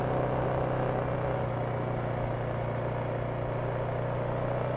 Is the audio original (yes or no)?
yes